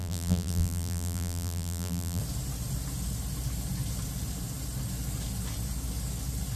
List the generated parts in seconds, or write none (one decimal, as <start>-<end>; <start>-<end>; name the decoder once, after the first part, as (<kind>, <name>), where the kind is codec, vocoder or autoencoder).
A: 0.0-2.2 (vocoder, BigVGAN v2)